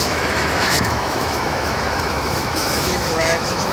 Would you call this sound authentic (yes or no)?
no